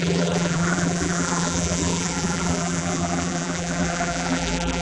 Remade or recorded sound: remade